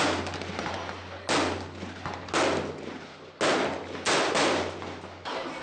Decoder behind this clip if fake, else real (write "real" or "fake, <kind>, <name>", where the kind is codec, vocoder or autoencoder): real